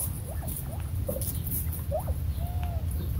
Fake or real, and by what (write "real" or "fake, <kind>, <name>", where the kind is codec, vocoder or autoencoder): real